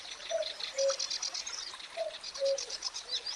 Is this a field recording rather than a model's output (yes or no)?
yes